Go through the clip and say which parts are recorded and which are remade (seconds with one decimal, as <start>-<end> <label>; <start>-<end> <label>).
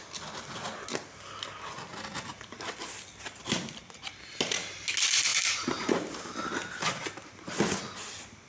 0.0-5.3 recorded; 5.3-6.2 remade; 6.2-8.5 recorded